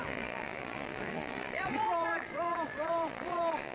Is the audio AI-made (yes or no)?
yes